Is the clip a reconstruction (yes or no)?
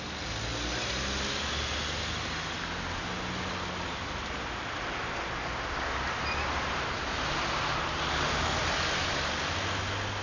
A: no